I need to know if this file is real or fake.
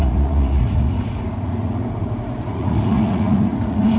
fake